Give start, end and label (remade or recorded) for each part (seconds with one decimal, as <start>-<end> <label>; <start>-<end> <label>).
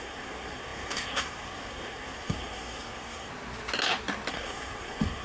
0.0-3.3 remade; 3.3-4.3 recorded; 4.3-5.2 remade